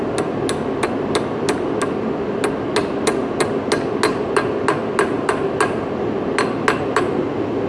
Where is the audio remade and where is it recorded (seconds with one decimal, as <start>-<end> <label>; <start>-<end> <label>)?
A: 0.0-7.7 recorded